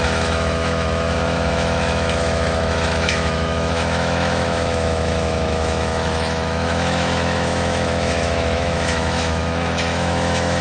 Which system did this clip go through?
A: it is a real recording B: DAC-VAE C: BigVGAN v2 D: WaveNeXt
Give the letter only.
B